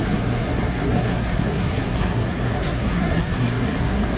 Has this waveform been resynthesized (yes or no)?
yes